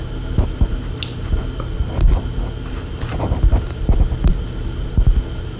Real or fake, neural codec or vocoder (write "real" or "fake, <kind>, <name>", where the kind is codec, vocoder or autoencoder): real